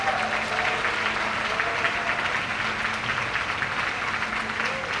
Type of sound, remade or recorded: recorded